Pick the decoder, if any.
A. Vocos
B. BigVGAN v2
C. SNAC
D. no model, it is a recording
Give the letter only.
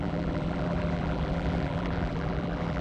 B